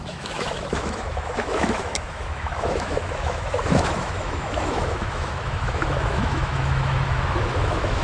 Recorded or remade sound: remade